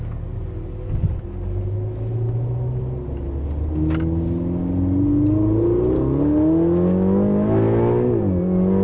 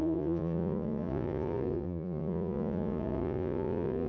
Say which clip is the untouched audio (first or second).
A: first